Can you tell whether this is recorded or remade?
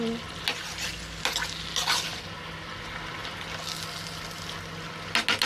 recorded